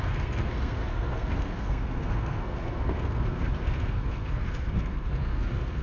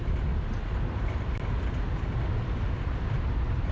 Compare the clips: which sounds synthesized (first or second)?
first